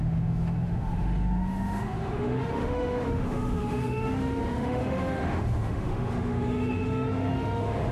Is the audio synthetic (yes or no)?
yes